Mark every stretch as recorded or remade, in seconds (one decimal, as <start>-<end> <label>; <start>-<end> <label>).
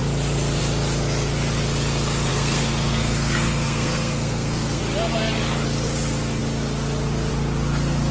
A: 0.0-2.3 recorded; 2.3-4.8 remade; 4.8-8.1 recorded